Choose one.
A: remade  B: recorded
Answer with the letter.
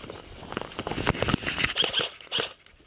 B